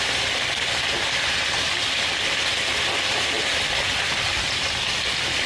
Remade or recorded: recorded